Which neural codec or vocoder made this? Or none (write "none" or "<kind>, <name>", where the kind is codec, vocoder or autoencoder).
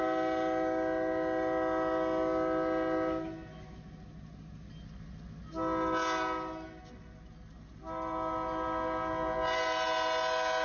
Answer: none